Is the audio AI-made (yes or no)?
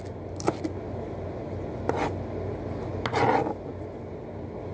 no